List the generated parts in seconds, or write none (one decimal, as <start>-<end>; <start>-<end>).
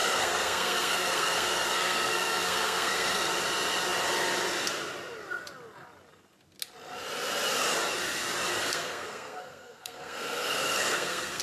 0.0-3.3; 8.5-11.4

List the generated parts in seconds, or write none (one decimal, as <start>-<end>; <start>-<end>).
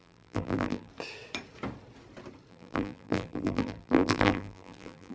0.0-0.9; 2.5-5.1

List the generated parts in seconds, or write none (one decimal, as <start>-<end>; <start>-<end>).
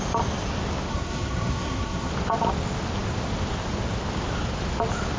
0.9-2.1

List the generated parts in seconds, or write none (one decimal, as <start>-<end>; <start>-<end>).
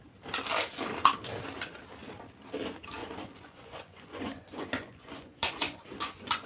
3.0-6.5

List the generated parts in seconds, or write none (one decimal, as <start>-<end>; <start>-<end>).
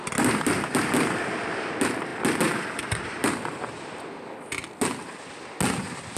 none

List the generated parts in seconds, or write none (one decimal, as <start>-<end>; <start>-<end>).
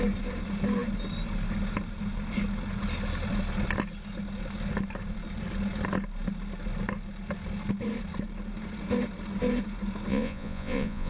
10.1-11.1